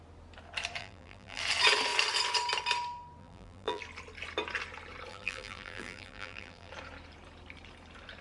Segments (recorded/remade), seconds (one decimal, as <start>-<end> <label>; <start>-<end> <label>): 0.0-0.8 recorded; 0.8-1.4 remade; 1.4-3.2 recorded; 3.2-3.8 remade; 3.8-5.1 recorded; 5.1-6.7 remade; 6.7-8.2 recorded

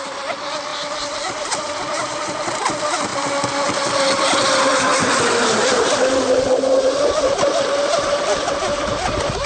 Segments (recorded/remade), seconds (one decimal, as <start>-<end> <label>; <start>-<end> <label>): 0.0-3.1 recorded; 3.1-4.4 remade; 4.4-9.5 recorded

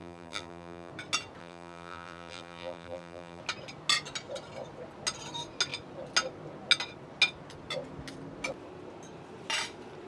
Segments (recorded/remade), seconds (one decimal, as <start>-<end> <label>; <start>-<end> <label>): 0.0-0.9 remade; 0.9-1.4 recorded; 1.4-3.4 remade; 3.4-10.1 recorded

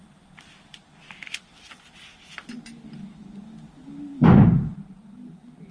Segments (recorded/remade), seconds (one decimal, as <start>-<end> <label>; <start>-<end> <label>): 0.0-5.7 recorded